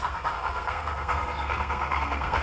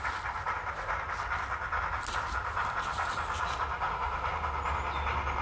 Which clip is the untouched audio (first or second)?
second